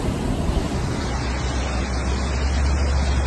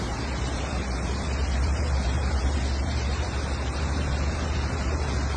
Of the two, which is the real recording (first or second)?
first